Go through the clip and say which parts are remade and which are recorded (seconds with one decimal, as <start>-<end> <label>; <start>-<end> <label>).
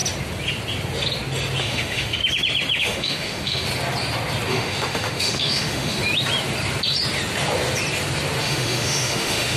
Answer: 0.0-1.6 recorded; 1.6-2.2 remade; 2.2-2.8 recorded; 2.8-3.7 remade; 3.7-4.5 recorded; 4.5-6.0 remade; 6.0-8.4 recorded; 8.4-9.6 remade